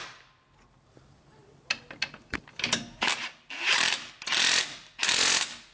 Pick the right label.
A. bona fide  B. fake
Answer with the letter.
A